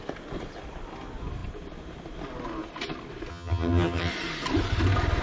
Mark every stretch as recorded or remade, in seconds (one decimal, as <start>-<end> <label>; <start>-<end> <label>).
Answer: 0.0-3.3 recorded; 3.3-4.1 remade; 4.1-5.2 recorded